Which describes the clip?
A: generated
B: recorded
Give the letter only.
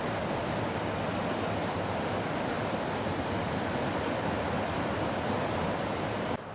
B